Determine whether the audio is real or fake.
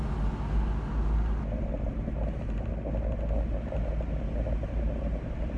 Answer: real